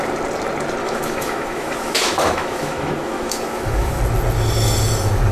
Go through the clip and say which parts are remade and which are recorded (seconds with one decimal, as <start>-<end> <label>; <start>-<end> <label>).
0.0-0.8 recorded; 0.8-4.0 remade; 4.0-5.3 recorded

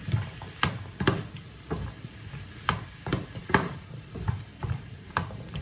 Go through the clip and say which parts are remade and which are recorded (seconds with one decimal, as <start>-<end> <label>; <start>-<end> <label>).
0.0-3.4 recorded; 3.4-5.6 remade

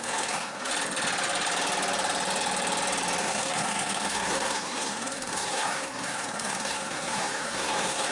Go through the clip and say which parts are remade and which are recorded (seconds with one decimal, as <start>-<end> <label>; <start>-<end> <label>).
0.0-0.7 remade; 0.7-3.2 recorded; 3.2-8.1 remade